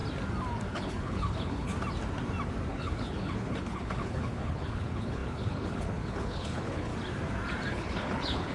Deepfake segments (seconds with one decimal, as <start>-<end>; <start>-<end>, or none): 0.7-1.7; 2.7-6.9; 7.7-8.5

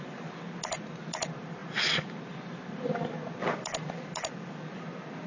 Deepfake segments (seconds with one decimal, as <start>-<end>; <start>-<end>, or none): none

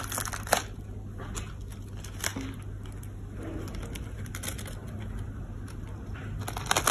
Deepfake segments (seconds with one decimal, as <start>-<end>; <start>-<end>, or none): none

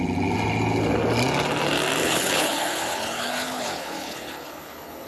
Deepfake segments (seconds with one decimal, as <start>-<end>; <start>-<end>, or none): 2.0-5.1

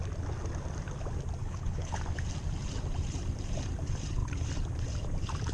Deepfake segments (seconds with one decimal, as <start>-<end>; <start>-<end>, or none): 1.4-2.0

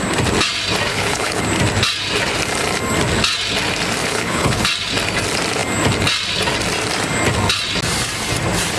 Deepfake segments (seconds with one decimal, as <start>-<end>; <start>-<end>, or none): 0.9-1.4; 4.0-4.6

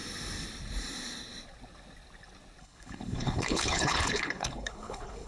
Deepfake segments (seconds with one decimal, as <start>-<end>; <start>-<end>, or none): 2.6-5.3

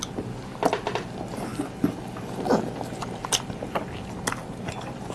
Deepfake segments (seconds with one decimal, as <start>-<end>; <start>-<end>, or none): none